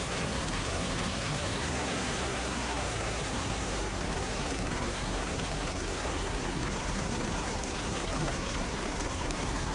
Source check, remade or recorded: remade